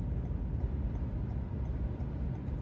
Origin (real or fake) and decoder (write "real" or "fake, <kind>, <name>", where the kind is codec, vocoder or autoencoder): real